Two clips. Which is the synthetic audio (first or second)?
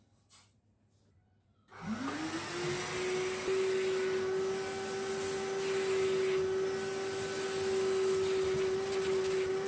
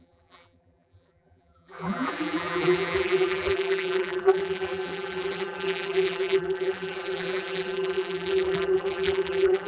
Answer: second